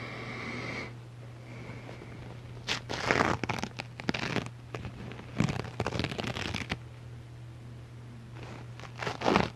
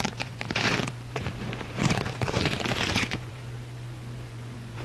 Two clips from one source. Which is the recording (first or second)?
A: first